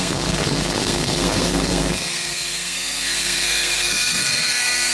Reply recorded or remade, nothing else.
remade